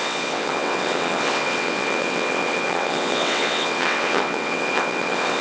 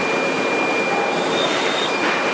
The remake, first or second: first